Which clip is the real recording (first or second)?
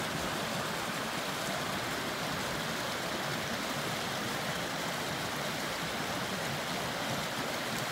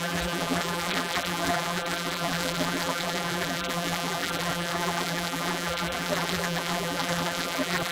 first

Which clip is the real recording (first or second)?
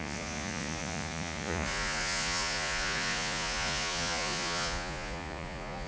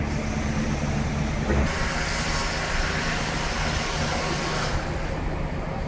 second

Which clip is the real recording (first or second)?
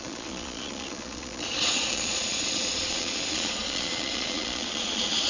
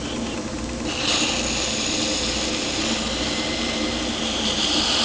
second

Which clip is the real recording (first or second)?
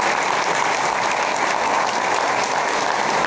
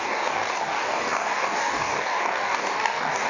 first